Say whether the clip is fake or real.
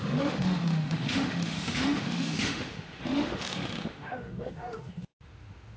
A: fake